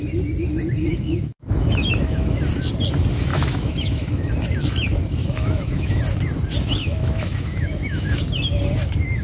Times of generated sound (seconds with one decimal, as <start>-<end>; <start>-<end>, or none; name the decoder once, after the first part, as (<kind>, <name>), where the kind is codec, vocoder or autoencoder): 0.9-2.4 (autoencoder, DAC-VAE); 3.3-4.3; 5.2-6.0; 6.8-8.2

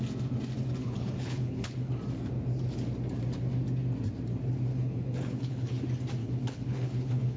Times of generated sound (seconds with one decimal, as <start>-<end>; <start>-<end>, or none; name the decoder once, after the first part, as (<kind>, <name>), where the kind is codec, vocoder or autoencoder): 0.8-1.9 (codec, HILCodec); 4.7-5.8; 6.2-7.4

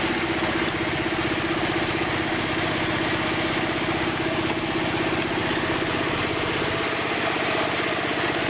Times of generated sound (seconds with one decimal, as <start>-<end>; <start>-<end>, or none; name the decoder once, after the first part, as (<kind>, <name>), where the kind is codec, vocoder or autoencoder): none